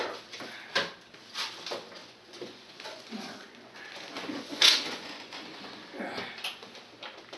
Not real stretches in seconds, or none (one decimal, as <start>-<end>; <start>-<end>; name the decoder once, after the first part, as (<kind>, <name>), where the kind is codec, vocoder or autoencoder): 2.0-6.2 (vocoder, Vocos)